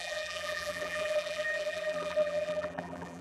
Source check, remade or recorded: remade